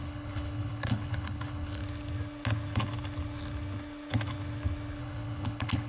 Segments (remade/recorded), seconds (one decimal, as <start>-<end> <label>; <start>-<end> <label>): 0.0-1.8 remade; 1.8-5.0 recorded; 5.0-5.9 remade